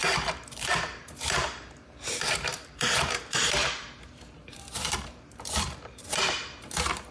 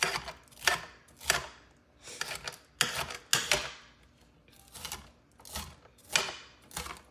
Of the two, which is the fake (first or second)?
first